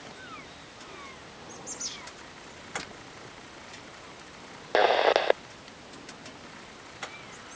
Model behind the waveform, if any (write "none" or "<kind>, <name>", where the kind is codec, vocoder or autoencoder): none